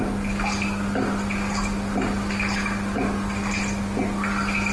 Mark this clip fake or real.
real